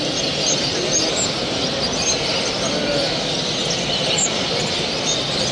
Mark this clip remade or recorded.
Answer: recorded